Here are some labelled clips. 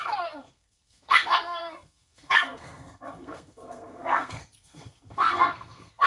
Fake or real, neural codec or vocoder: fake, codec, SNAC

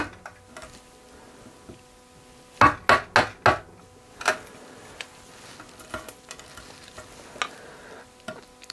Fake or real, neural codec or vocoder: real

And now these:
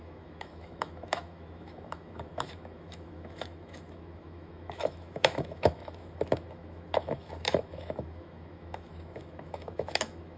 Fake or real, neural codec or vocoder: fake, autoencoder, DAC-VAE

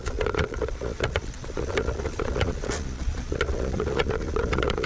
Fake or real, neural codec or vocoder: fake, vocoder, Vocos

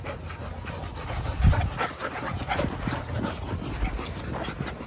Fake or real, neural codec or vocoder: real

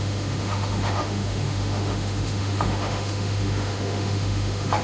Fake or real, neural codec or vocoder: fake, autoencoder, DAC-VAE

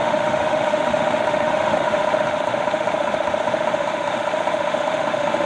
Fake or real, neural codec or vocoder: fake, autoencoder, DAC-VAE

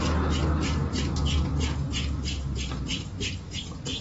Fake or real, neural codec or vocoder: real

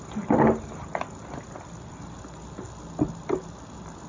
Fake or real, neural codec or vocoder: real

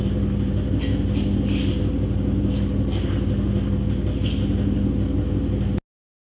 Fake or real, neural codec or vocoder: real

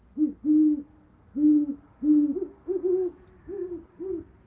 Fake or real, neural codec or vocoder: real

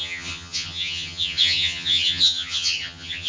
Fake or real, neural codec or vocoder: fake, vocoder, HiFi-GAN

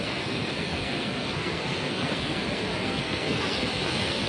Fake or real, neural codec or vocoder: fake, codec, SNAC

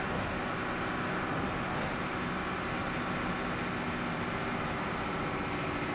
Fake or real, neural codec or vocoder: real